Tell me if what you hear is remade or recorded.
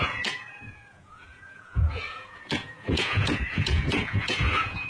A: remade